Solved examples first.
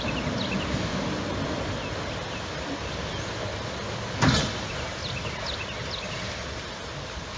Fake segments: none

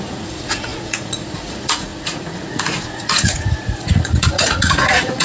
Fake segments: 0.0-5.2